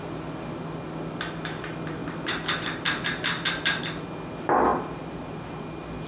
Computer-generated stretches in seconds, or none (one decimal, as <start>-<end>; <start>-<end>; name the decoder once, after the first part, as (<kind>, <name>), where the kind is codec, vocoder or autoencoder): 2.0-3.8 (vocoder, BigVGAN v2); 4.7-6.1